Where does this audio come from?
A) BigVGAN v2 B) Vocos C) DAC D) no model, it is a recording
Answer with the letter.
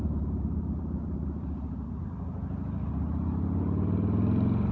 D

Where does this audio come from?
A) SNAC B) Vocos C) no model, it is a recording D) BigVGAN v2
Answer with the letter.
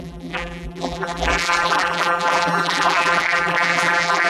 D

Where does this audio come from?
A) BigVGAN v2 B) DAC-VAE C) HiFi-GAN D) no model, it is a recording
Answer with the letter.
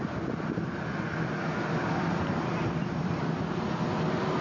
D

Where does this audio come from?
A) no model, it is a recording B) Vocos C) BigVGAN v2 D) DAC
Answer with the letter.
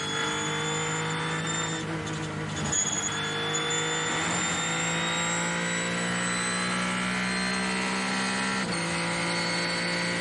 A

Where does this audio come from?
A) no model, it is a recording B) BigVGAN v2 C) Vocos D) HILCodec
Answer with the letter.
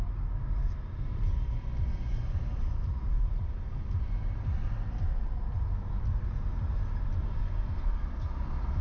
A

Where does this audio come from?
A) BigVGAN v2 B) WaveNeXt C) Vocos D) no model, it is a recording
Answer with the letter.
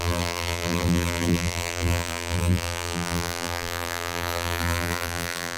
A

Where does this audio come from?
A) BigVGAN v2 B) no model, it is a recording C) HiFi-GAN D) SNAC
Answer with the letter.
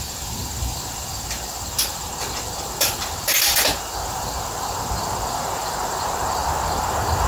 A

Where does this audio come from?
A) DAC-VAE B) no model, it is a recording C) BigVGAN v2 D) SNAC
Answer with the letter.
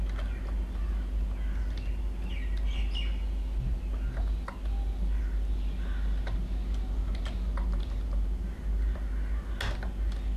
B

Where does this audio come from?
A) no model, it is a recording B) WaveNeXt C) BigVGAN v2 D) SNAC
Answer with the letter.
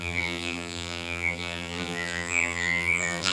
C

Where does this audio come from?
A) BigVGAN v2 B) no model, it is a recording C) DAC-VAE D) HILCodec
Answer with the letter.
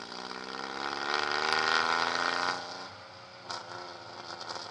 B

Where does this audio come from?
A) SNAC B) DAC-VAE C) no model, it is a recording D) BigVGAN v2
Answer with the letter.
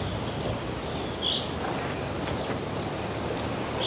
C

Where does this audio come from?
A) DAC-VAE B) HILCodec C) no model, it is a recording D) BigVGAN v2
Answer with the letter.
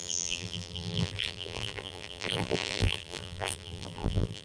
D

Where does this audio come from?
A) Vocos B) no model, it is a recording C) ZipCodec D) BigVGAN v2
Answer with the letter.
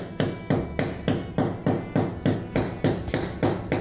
B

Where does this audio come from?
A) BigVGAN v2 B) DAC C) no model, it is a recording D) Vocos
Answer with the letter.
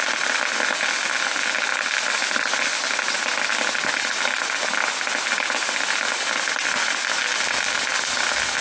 C